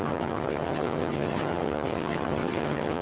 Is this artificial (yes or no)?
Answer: yes